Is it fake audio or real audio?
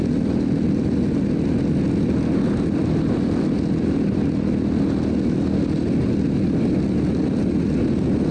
real